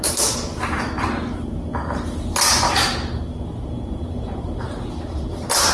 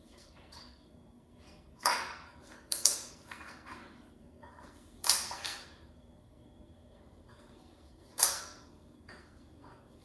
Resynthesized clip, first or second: second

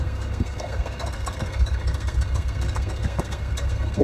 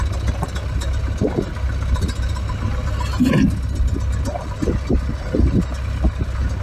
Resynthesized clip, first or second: first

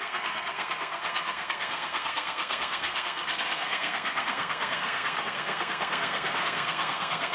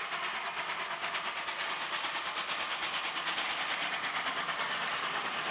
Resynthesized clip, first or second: first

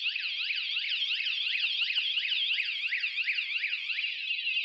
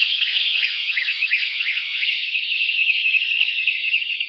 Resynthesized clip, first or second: second